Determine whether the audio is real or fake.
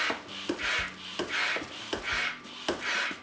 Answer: real